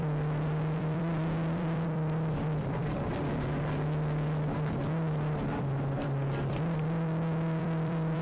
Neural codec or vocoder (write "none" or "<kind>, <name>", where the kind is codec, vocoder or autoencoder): vocoder, BigVGAN v2